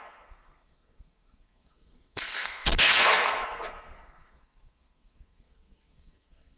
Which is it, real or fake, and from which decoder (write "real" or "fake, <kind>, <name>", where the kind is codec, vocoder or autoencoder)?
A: fake, codec, SNAC